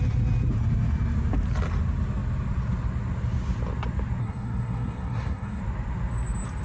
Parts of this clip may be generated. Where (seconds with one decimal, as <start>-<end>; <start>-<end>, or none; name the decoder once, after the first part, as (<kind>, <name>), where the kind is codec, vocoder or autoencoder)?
4.2-5.6 (codec, SNAC)

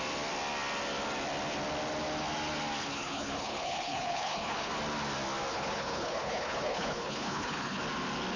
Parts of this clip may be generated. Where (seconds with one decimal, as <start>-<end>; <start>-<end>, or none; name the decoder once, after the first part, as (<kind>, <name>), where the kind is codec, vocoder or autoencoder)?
2.8-4.7 (codec, HILCodec); 5.5-7.8

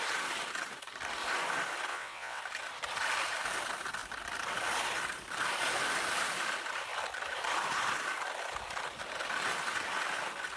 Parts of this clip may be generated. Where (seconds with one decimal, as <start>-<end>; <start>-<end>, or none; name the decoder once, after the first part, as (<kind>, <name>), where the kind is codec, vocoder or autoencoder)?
1.9-2.4 (vocoder, WaveNeXt)

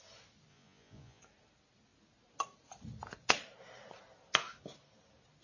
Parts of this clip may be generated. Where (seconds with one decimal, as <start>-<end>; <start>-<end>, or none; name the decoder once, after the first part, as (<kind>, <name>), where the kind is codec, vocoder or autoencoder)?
0.5-1.2 (vocoder, Vocos)

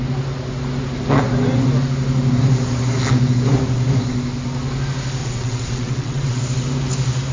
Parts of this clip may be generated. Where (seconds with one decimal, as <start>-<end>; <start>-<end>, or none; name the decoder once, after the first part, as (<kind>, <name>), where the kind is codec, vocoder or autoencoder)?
5.2-6.4 (vocoder, WaveNeXt)

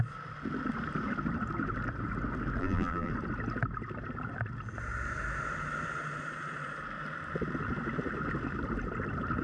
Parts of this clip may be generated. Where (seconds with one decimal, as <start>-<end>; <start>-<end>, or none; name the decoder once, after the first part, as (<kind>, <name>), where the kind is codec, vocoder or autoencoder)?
2.6-3.1 (vocoder, BigVGAN v2)

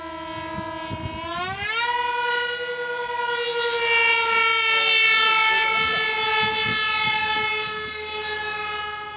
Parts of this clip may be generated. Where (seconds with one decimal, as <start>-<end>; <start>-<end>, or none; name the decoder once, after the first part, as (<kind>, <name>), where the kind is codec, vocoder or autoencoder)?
none